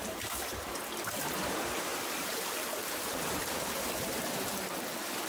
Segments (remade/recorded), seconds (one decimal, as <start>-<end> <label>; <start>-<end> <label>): 0.0-0.5 remade; 0.5-1.2 recorded; 1.2-5.3 remade